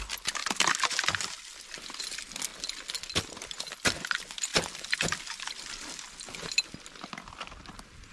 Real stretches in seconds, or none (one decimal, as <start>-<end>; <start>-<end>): 0.0-8.1